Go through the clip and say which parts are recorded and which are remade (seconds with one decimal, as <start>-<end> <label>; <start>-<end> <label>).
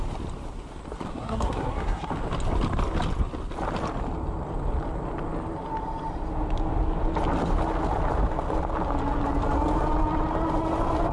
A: 0.0-1.1 recorded; 1.1-2.1 remade; 2.1-11.1 recorded